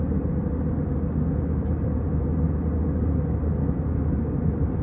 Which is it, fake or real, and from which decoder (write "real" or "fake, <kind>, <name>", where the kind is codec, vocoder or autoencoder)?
real